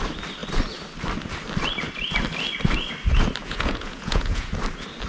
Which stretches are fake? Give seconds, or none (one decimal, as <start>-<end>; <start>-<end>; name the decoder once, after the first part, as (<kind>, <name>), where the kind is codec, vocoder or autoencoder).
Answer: 3.4-4.5 (vocoder, Vocos)